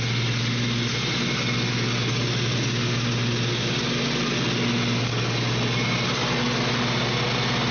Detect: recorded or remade recorded